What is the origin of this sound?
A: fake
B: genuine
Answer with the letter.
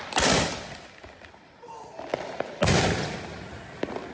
B